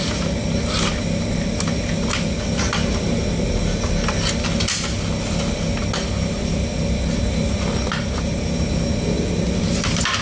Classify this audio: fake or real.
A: real